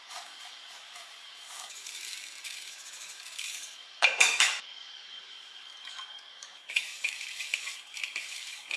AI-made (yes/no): yes